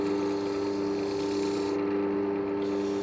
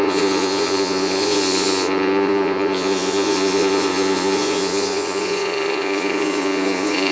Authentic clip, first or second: first